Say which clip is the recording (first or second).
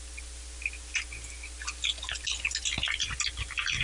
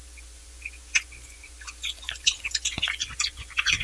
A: first